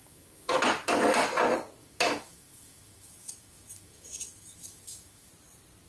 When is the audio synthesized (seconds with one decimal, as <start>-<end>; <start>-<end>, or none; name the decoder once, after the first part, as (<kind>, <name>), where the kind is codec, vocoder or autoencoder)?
0.0-0.5 (autoencoder, DAC-VAE); 1.8-5.3